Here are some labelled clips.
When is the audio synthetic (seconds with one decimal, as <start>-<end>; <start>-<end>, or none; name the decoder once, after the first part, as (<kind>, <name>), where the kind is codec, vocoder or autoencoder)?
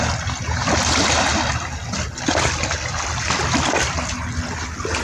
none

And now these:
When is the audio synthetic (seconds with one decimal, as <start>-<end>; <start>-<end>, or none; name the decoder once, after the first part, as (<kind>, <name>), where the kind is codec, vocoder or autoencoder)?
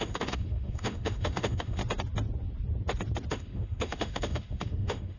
0.0-1.8 (autoencoder, DAC-VAE); 3.3-5.2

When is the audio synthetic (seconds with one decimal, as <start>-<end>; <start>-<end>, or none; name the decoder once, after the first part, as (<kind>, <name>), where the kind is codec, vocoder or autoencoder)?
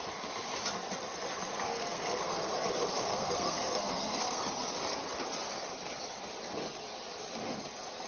1.5-2.5 (codec, SNAC); 3.1-4.4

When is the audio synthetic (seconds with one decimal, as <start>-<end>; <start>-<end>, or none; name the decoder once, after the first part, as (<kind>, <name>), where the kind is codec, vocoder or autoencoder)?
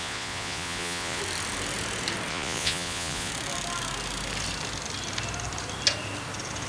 0.0-1.2 (vocoder, Vocos); 2.3-3.3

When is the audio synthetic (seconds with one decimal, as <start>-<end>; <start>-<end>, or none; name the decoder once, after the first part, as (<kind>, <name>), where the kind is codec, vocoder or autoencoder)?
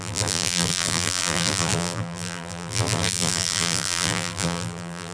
0.0-5.1 (vocoder, BigVGAN v2)